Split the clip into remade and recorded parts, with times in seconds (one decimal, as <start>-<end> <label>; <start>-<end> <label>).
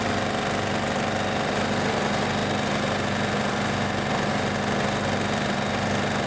0.0-6.3 recorded